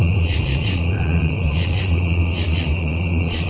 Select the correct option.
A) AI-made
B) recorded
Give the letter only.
A